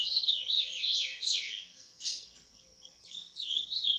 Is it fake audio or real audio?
fake